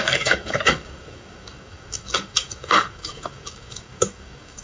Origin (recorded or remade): remade